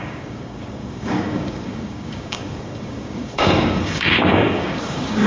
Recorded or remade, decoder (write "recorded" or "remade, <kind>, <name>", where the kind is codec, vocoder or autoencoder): remade, codec, DAC